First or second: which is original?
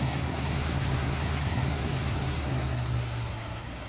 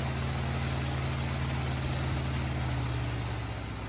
second